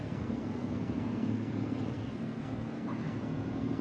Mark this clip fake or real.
fake